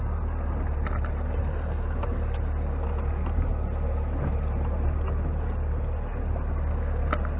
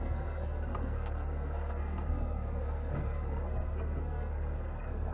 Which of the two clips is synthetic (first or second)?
second